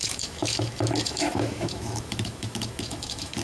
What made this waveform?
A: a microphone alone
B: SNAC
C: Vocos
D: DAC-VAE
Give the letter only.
D